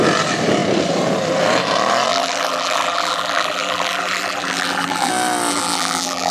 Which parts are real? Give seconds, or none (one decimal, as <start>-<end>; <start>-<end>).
0.0-2.1; 5.1-5.5